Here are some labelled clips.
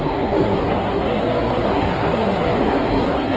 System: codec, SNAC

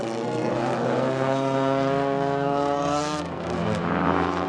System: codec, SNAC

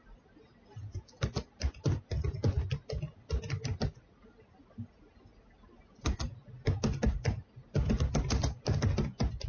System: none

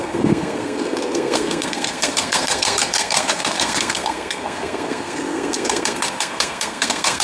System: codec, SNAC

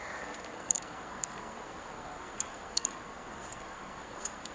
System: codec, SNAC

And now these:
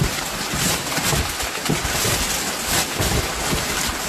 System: none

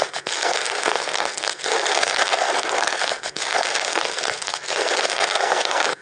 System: codec, SNAC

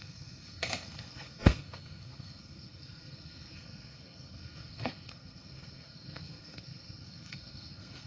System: codec, SNAC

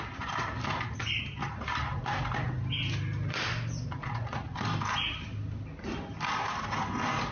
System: none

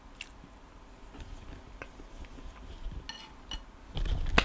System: none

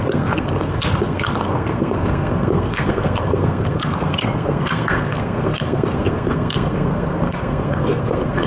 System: codec, SNAC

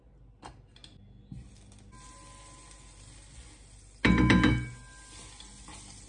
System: none